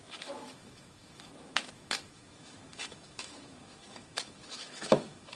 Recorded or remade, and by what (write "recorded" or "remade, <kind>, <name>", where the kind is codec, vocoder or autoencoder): remade, autoencoder, DAC-VAE